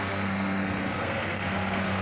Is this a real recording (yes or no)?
no